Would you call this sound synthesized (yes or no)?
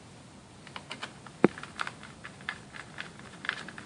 no